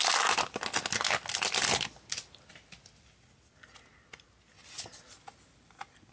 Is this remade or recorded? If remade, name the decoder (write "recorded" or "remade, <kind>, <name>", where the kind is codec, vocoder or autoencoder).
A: recorded